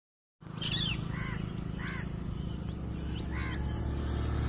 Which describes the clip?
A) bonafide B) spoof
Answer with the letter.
A